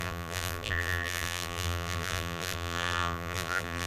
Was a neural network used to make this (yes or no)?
yes